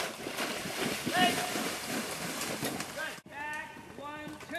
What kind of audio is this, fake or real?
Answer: real